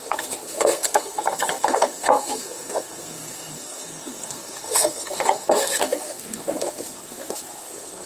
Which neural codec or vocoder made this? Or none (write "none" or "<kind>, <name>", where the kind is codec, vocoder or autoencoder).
codec, SNAC